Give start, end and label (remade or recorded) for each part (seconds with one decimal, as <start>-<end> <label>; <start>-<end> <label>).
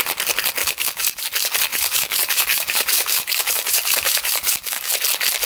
0.0-0.6 recorded; 0.6-1.2 remade; 1.2-1.7 recorded; 1.7-4.9 remade; 4.9-5.4 recorded